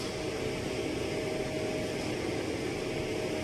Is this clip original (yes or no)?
yes